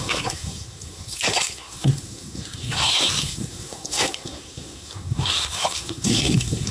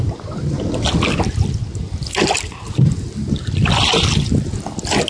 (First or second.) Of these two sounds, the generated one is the first